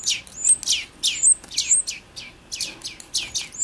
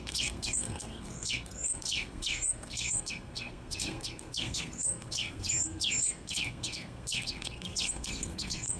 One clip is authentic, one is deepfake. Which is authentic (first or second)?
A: first